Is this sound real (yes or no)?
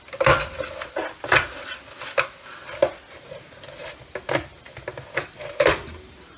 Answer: yes